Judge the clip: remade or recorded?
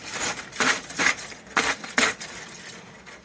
recorded